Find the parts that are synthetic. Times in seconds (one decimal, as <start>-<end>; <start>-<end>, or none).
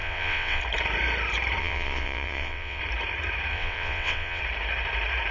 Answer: 0.0-0.6; 1.6-2.8; 3.5-4.4